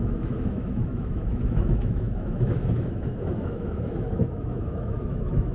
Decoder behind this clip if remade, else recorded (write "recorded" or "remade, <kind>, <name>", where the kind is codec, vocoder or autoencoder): remade, autoencoder, DAC-VAE